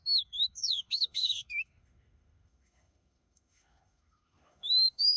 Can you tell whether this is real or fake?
fake